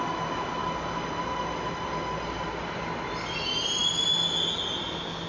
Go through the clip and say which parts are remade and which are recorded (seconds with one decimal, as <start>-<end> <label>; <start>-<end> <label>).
0.0-5.3 recorded